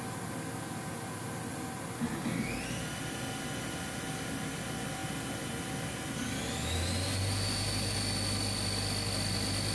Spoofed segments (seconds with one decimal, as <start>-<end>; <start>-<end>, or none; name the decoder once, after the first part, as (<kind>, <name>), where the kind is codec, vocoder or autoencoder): none